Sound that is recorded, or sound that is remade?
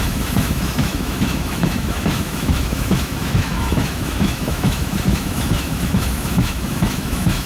remade